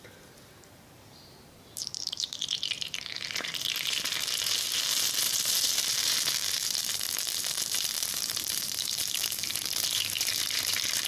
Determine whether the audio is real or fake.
fake